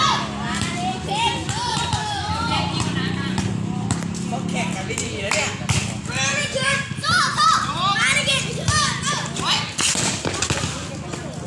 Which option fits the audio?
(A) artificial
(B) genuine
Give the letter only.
B